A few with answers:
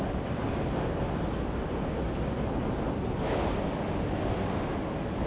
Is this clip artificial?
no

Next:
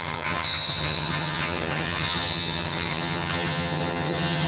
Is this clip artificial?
yes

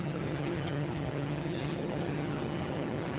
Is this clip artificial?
yes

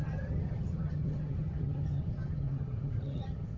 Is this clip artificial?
yes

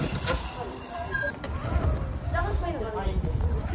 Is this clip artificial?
no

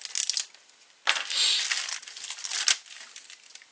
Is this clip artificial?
no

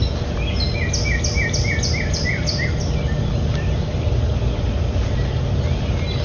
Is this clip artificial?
no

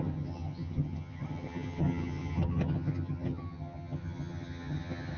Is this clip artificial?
yes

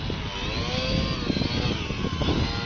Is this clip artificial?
no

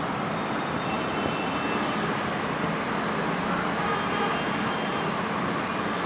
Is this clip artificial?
no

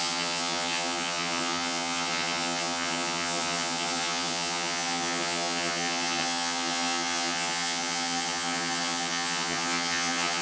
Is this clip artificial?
yes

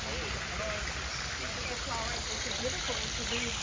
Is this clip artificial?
no